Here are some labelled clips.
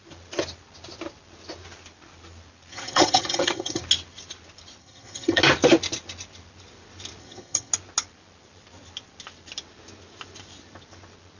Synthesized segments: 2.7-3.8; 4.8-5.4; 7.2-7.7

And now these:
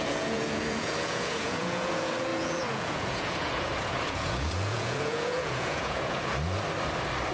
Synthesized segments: 0.0-6.3

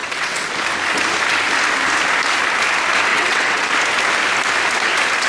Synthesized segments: 0.0-0.5; 3.1-3.7

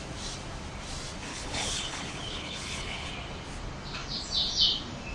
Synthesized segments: 1.3-3.1

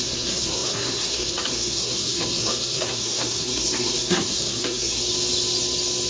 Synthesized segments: 0.0-5.0